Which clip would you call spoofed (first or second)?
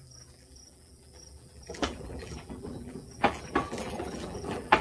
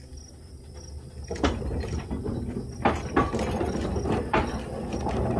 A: first